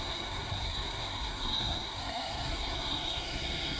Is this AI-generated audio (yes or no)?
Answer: yes